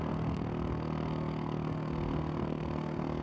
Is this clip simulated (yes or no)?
yes